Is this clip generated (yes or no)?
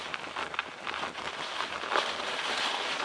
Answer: no